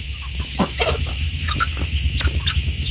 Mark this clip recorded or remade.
remade